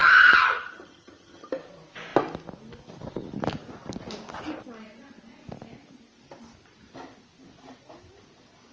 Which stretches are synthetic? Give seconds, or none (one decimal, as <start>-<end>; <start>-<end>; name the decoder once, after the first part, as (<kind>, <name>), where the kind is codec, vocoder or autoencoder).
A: 0.0-1.5 (vocoder, HiFi-GAN)